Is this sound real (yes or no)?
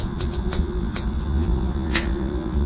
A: no